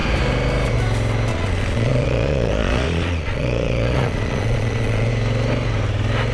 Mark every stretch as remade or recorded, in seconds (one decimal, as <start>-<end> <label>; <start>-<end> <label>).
0.0-1.3 recorded; 1.3-5.1 remade; 5.1-6.3 recorded